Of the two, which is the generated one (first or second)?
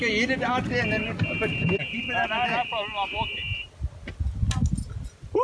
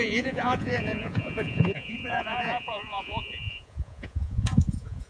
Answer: second